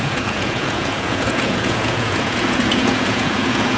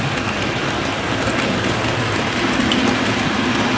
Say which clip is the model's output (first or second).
first